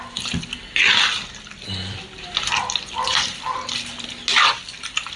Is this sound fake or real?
real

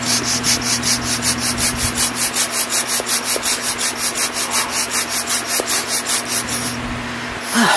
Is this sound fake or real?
real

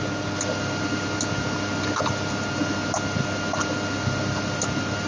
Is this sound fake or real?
real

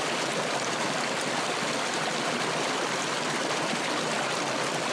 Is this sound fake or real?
real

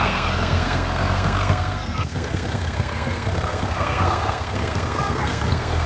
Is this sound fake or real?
fake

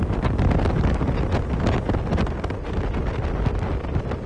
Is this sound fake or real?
real